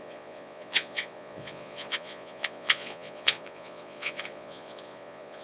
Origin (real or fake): fake